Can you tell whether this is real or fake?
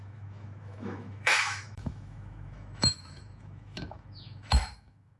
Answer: fake